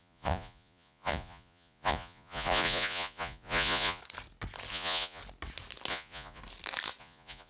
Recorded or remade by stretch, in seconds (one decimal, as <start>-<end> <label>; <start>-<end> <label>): 0.0-4.0 remade; 4.0-4.7 recorded; 4.7-5.2 remade; 5.2-5.9 recorded; 5.9-6.4 remade; 6.4-7.0 recorded; 7.0-7.5 remade